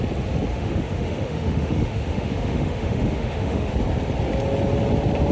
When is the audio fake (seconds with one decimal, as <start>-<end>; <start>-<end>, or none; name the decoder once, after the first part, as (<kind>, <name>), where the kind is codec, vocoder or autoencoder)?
0.5-3.7 (autoencoder, DAC-VAE)

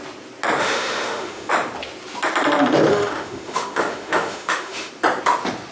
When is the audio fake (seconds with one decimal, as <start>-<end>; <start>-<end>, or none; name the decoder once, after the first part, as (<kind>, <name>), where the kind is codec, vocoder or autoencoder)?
0.6-1.5 (autoencoder, DAC-VAE); 2.9-4.9

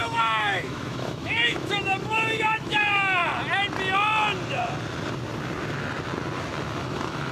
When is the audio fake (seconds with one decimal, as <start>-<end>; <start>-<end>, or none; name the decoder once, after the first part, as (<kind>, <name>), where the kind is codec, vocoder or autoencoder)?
0.0-3.2 (autoencoder, DAC-VAE); 6.8-7.3